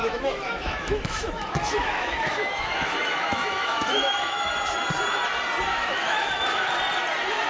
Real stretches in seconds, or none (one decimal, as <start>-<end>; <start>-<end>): 4.5-5.7; 6.7-7.5